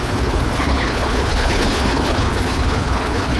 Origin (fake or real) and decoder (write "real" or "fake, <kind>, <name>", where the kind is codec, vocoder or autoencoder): fake, codec, HILCodec